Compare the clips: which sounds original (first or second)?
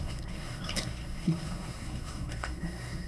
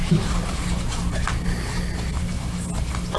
second